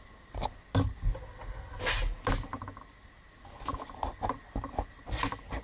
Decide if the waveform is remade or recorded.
recorded